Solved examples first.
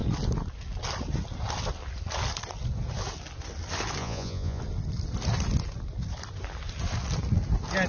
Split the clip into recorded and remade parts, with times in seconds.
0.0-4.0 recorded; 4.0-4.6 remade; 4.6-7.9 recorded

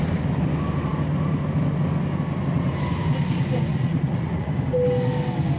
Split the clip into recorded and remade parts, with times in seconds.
0.0-3.7 recorded; 3.7-4.5 remade; 4.5-5.6 recorded

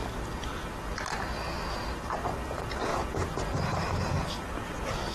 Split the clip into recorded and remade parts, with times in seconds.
0.0-2.9 recorded; 2.9-3.4 remade; 3.4-5.1 recorded

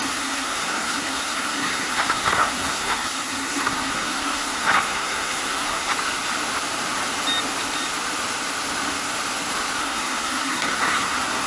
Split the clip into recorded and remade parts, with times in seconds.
0.0-5.9 remade; 5.9-9.8 recorded; 9.8-11.5 remade

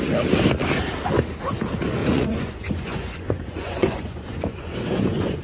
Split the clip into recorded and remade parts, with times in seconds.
0.0-2.0 recorded; 2.0-5.4 remade

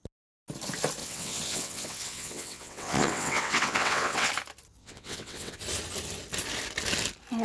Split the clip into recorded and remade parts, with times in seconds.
0.0-1.0 recorded; 1.0-4.3 remade; 4.3-4.8 recorded; 4.8-5.6 remade; 5.6-7.4 recorded

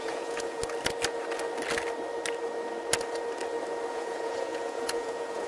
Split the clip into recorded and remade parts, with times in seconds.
0.0-0.6 remade; 0.6-3.9 recorded; 3.9-5.5 remade